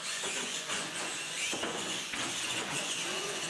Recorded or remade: remade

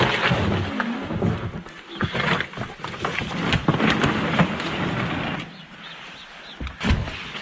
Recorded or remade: recorded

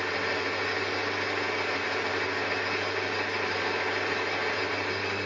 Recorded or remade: recorded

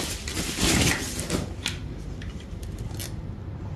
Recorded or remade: recorded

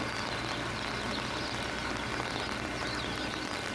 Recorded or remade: recorded